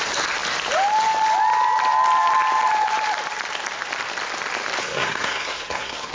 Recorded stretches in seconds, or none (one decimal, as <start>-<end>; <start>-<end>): 0.0-4.8